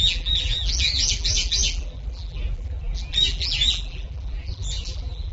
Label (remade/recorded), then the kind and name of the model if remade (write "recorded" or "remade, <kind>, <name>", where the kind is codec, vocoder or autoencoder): remade, vocoder, BigVGAN v2